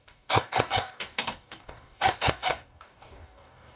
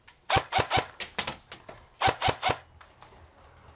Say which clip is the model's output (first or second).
first